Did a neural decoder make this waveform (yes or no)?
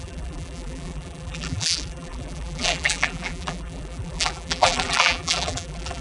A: yes